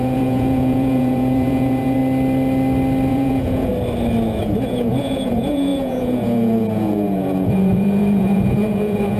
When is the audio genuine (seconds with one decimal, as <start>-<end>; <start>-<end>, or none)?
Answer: 2.0-3.1; 3.7-4.4